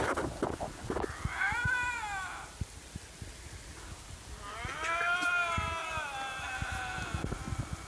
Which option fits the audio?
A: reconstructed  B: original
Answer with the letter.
B